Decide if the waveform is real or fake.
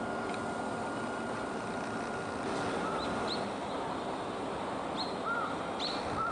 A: real